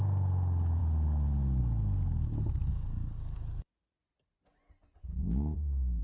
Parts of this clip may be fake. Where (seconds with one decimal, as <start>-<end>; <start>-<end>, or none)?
2.7-4.0; 5.2-6.0